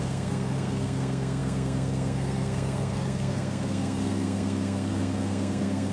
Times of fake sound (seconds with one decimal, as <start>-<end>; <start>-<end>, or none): 0.0-5.9